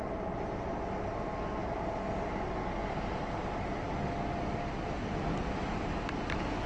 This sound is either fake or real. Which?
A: real